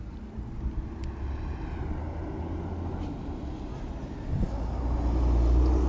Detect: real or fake real